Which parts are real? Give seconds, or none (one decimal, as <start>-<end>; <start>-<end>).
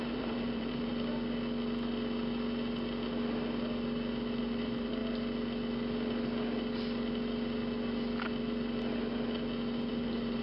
0.9-4.4; 5.0-9.9